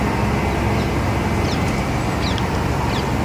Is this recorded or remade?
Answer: recorded